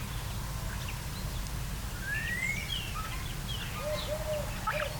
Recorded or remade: recorded